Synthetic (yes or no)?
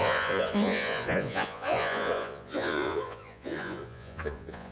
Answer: yes